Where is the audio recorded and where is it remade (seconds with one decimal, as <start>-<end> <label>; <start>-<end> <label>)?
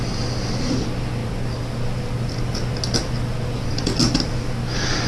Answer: 0.0-5.1 recorded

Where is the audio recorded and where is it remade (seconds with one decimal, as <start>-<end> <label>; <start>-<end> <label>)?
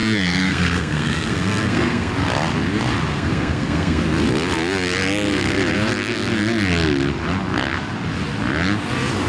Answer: 0.0-2.1 remade; 2.1-3.1 recorded; 3.1-4.0 remade; 4.0-9.3 recorded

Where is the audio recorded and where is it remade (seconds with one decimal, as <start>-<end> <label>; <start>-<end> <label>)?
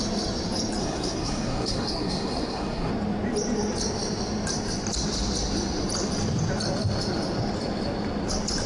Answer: 0.0-0.8 recorded; 0.8-2.9 remade; 2.9-8.7 recorded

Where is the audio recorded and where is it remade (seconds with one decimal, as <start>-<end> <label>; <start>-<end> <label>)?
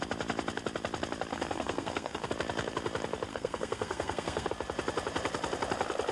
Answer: 0.0-1.3 recorded; 1.3-2.3 remade; 2.3-3.3 recorded; 3.3-4.5 remade; 4.5-6.1 recorded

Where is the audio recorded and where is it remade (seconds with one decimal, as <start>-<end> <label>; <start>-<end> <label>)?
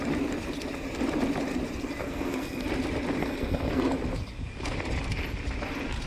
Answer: 0.0-2.0 recorded; 2.0-2.7 remade; 2.7-3.2 recorded; 3.2-3.8 remade; 3.8-6.1 recorded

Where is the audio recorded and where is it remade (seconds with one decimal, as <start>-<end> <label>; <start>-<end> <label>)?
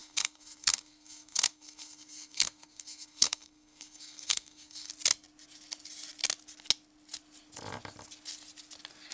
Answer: 0.0-4.9 remade; 4.9-9.1 recorded